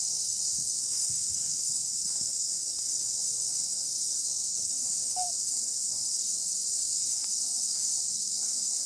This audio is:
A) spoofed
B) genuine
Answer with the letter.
A